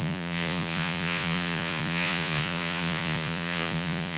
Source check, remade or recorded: remade